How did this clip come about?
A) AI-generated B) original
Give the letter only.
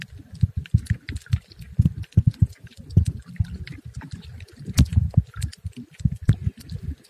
B